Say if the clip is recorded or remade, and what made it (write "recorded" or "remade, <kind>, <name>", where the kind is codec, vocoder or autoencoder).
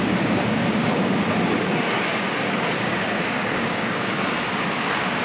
remade, codec, DAC